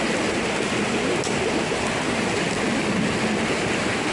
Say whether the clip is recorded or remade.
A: recorded